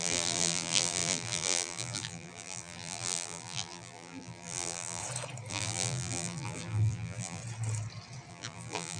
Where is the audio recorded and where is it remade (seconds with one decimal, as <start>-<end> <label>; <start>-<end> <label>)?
0.0-5.0 remade; 5.0-5.5 recorded; 5.5-7.4 remade; 7.4-8.3 recorded; 8.3-9.0 remade